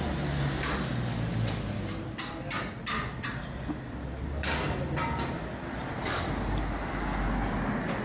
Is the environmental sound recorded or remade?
recorded